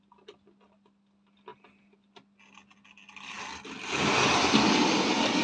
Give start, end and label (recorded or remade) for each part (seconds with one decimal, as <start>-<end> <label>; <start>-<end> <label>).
0.0-5.4 recorded